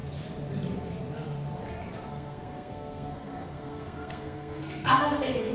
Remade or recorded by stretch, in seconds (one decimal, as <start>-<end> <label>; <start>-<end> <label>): 0.0-2.1 recorded; 2.1-5.5 remade

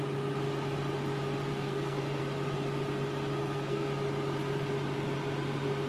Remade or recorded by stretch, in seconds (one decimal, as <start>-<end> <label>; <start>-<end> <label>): 0.0-1.5 recorded; 1.5-2.2 remade; 2.2-3.4 recorded; 3.4-3.9 remade; 3.9-5.9 recorded

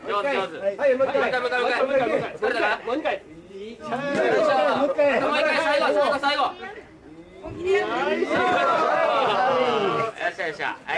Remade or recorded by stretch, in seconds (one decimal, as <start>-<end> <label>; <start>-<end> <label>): 0.0-11.0 recorded